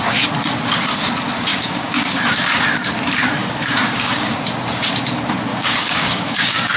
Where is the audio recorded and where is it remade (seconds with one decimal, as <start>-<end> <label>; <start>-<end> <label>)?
0.0-1.5 recorded; 1.5-2.2 remade; 2.2-3.4 recorded; 3.4-4.4 remade; 4.4-5.5 recorded; 5.5-6.8 remade